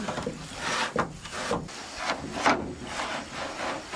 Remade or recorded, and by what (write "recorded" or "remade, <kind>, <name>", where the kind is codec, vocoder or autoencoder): recorded